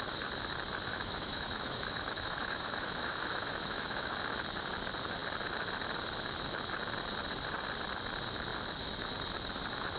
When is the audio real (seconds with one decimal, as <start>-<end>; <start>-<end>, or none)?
0.0-0.9; 4.1-10.0